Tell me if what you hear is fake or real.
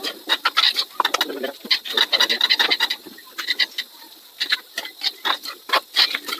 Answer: real